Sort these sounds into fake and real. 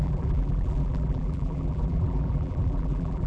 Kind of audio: fake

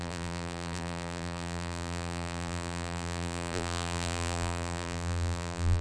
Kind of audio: fake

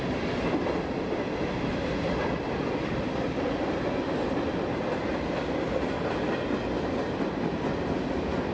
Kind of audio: real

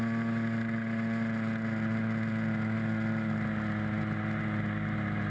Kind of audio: real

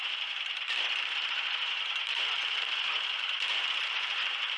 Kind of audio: fake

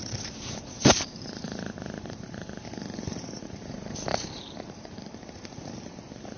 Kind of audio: fake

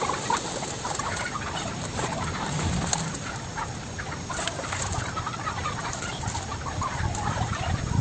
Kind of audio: fake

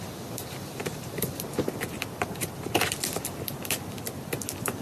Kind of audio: real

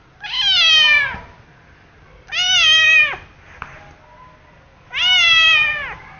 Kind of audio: real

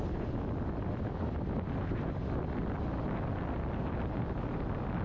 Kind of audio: fake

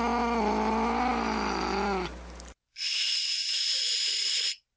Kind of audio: real